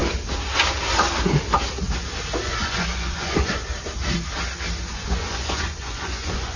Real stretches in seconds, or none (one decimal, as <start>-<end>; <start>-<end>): 0.0-2.4; 3.6-4.9